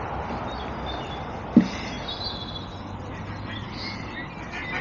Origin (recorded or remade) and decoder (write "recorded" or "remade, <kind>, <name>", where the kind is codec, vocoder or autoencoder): recorded